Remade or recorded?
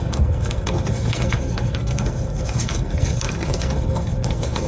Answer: remade